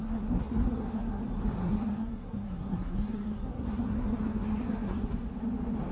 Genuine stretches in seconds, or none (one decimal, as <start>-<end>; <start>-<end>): 1.2-1.6; 5.1-5.9